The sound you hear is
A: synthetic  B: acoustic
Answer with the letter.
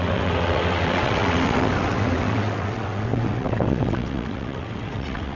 A